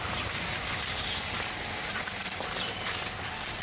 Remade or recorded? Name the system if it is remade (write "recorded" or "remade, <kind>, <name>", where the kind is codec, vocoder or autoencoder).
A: recorded